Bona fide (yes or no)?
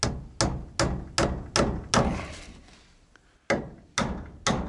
yes